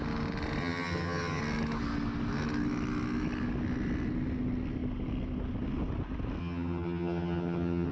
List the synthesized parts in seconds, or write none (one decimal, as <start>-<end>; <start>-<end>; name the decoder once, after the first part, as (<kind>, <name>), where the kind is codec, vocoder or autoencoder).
0.6-1.4 (vocoder, HiFi-GAN); 6.4-7.9